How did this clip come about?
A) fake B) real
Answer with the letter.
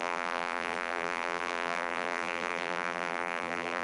A